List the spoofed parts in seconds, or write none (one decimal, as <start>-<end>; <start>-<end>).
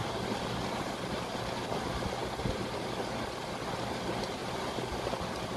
none